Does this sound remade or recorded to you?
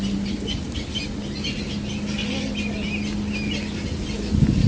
recorded